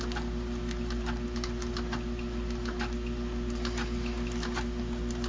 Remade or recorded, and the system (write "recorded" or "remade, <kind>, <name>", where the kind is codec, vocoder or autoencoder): recorded